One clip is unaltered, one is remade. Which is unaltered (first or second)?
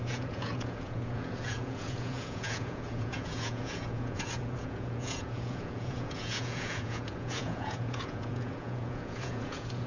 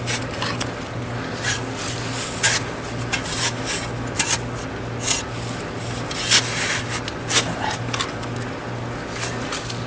second